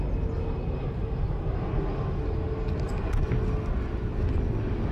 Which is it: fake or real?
real